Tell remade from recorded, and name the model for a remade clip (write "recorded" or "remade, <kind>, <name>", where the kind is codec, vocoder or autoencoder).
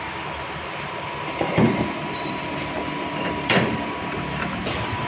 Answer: remade, vocoder, BigVGAN v2